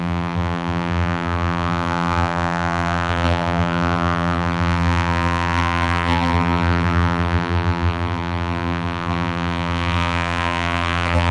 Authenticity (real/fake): fake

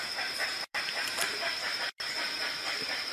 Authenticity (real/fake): fake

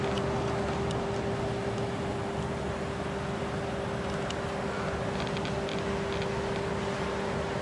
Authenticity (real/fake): real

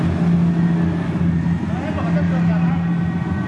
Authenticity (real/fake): real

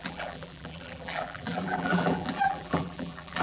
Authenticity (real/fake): fake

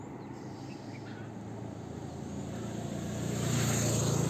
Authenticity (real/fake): real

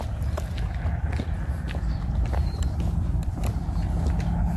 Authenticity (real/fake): real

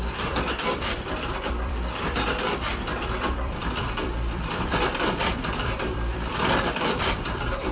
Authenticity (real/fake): fake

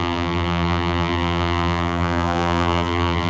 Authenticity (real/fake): fake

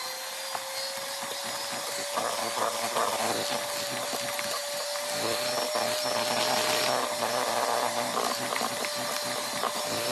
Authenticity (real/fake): real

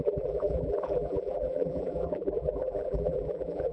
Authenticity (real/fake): fake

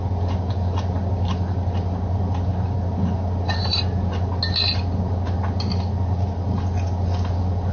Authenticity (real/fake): real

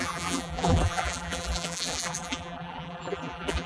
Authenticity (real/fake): fake